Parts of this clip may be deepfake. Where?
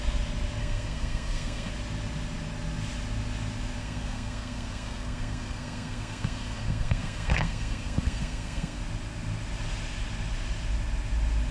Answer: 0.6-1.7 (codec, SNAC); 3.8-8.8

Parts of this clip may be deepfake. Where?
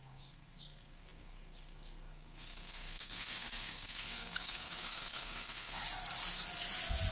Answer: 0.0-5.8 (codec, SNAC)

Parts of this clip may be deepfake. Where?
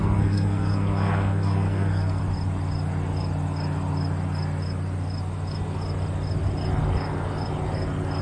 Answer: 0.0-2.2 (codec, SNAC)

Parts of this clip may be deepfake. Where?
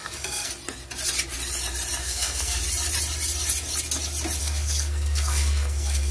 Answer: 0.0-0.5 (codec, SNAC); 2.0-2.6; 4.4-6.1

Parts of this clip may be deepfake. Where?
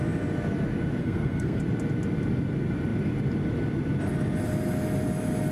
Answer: 1.0-1.6 (codec, SNAC)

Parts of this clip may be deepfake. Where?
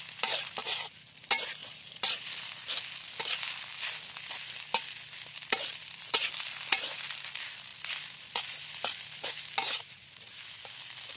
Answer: none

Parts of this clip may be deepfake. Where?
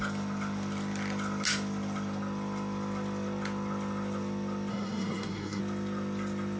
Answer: 4.7-5.6 (codec, SNAC)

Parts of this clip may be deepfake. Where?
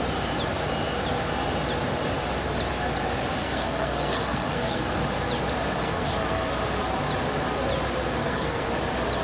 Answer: 3.4-5.0 (codec, SNAC); 5.8-6.5; 8.2-8.7